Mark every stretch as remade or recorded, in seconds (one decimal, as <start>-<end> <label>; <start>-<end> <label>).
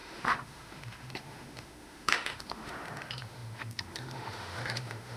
0.0-5.2 remade